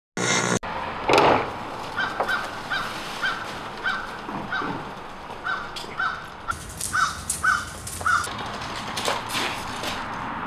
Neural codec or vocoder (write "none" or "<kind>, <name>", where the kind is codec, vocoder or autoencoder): none